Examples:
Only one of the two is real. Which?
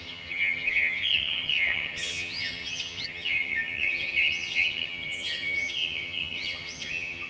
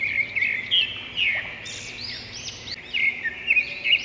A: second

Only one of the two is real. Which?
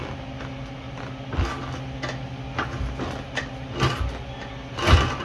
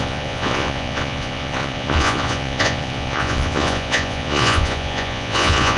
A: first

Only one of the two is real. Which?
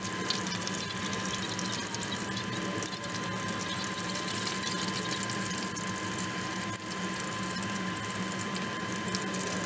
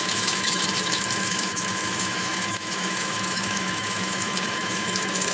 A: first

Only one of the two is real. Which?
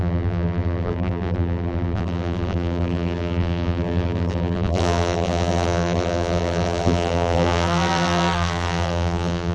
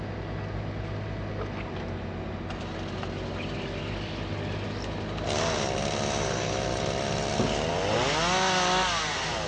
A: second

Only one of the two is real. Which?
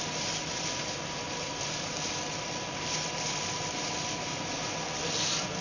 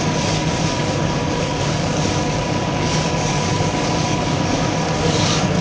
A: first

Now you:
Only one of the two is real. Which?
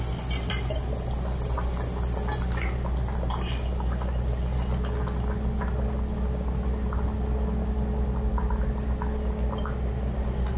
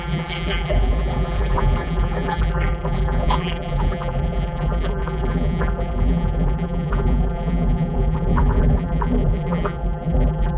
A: first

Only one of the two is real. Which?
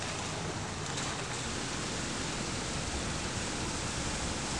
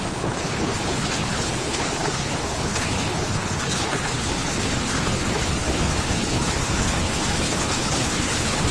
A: first